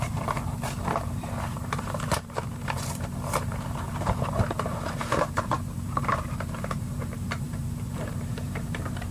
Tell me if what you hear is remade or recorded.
remade